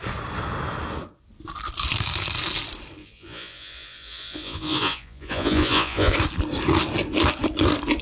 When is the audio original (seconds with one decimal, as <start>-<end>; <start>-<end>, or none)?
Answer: 0.0-3.0; 6.1-8.0